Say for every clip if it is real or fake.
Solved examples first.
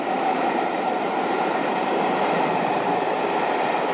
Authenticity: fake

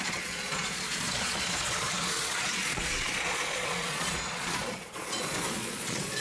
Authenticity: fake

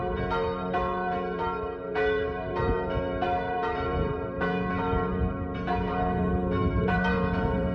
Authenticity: fake